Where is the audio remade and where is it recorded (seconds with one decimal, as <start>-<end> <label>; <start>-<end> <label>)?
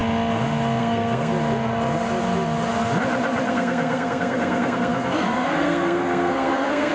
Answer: 0.0-0.8 recorded; 0.8-1.3 remade; 1.3-3.5 recorded; 3.5-6.9 remade